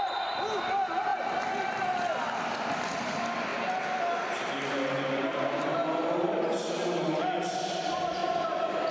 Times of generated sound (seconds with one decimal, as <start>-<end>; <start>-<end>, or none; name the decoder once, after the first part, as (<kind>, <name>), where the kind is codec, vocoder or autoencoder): none